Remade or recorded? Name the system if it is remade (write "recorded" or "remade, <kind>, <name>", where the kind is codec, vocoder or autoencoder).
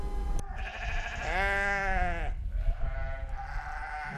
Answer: recorded